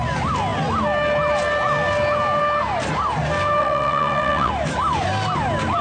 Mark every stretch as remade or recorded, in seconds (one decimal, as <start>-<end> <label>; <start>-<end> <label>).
0.0-3.6 recorded; 3.6-4.5 remade; 4.5-5.8 recorded